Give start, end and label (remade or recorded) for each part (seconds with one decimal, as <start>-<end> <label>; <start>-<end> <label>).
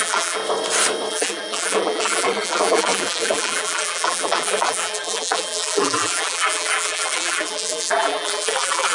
0.0-0.4 remade; 0.4-1.1 recorded; 1.1-8.9 remade